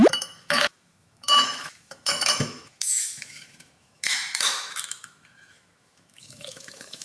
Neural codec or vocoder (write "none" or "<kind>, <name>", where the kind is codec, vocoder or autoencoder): autoencoder, DAC-VAE